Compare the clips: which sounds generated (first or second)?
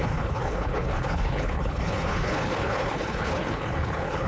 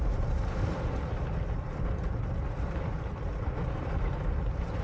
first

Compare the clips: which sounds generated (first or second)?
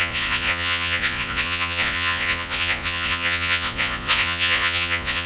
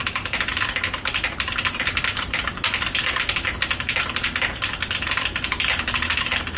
first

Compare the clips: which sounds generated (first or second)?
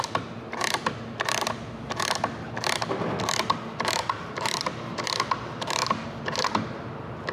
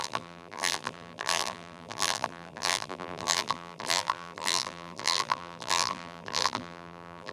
second